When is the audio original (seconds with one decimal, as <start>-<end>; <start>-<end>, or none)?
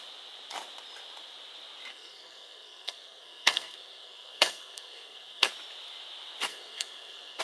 0.0-1.9; 5.5-6.5